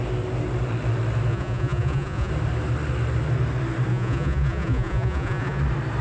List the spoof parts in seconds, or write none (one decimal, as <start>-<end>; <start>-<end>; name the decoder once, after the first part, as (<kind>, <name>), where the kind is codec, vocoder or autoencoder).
1.3-2.3 (vocoder, Vocos); 3.9-5.6